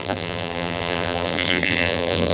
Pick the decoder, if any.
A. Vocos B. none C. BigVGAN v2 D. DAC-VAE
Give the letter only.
C